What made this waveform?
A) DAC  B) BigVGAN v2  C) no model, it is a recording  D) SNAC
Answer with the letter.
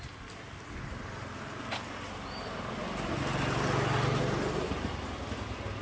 C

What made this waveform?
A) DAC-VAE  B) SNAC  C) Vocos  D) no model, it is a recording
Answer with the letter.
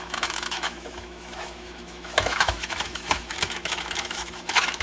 A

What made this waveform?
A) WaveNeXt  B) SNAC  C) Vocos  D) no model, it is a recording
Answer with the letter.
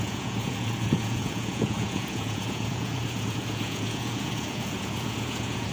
C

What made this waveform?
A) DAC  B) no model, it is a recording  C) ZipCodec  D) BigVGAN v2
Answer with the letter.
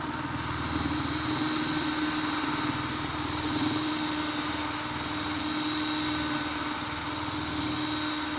B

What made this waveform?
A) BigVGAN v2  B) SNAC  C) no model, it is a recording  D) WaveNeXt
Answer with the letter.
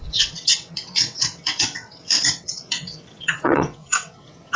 D